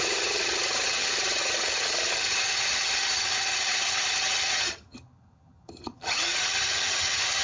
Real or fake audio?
fake